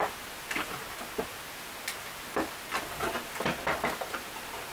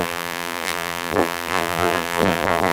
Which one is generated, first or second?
second